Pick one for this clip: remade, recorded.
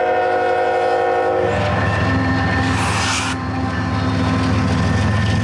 recorded